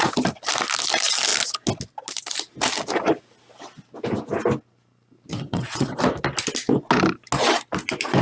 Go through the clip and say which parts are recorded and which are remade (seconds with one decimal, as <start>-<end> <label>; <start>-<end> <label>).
0.0-5.3 recorded; 5.3-6.0 remade; 6.0-8.2 recorded

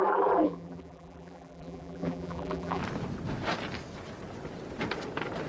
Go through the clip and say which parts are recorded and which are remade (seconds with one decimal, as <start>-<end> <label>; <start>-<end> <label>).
0.0-2.8 remade; 2.8-5.5 recorded